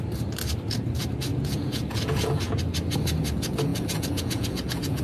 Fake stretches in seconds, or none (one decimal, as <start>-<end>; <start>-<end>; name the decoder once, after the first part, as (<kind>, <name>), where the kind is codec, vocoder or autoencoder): 1.3-2.6 (vocoder, Vocos); 3.7-5.0